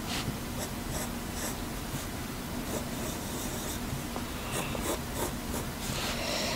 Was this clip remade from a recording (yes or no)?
no